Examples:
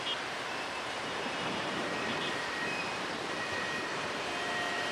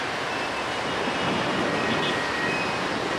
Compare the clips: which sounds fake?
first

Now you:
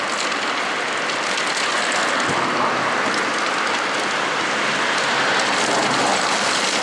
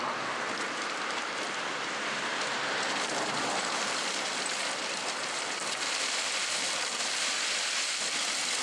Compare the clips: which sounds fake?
second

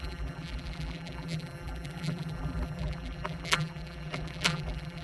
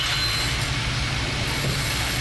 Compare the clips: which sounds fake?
first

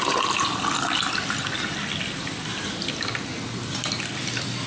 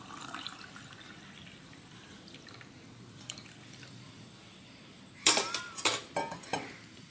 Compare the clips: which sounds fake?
second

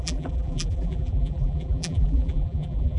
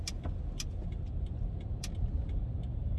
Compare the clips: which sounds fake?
first